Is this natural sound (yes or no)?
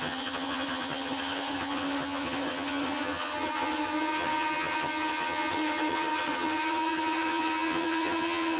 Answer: no